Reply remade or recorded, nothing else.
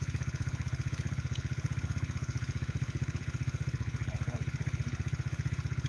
remade